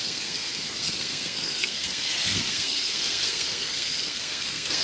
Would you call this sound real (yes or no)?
no